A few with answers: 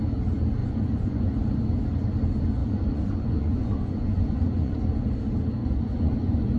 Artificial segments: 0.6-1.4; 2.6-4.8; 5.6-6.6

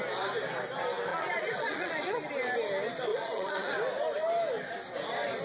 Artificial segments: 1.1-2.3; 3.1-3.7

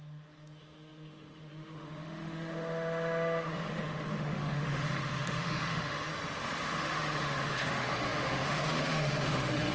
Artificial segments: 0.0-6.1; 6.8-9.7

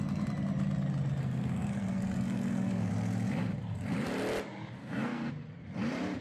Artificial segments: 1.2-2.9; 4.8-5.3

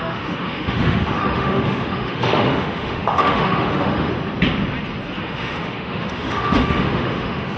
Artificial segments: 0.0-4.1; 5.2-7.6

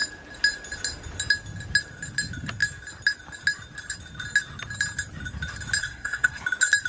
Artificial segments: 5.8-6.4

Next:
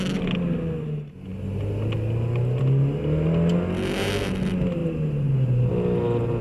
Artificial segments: none